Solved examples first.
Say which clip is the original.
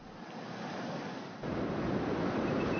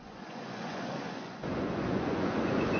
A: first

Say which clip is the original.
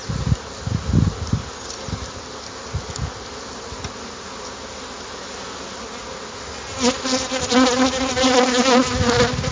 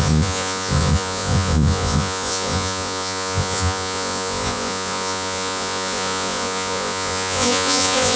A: first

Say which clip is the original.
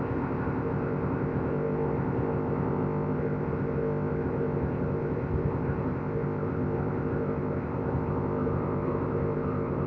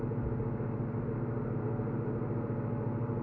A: second